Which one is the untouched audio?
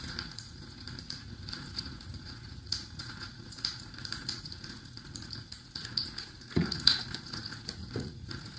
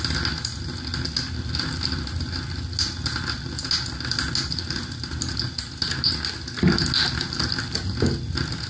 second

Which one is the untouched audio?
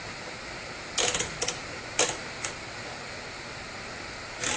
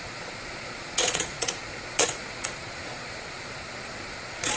first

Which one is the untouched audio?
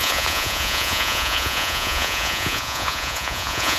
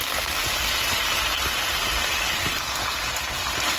second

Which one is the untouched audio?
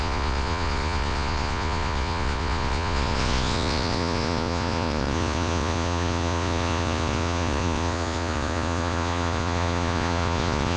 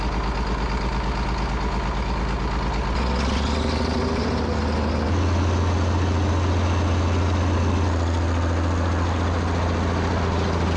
second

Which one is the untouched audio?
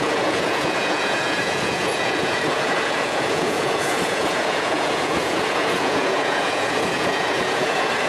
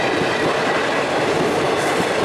second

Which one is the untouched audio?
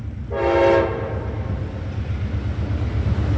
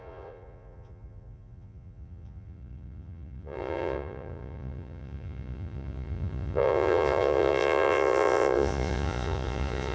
first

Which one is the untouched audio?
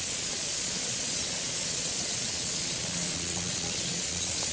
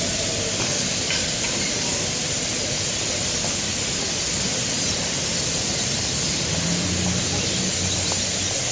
second